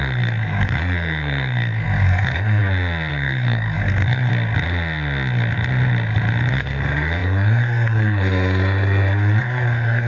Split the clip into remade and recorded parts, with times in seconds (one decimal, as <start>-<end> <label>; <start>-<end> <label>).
0.0-2.6 remade; 2.6-3.1 recorded; 3.1-4.3 remade; 4.3-6.5 recorded; 6.5-10.1 remade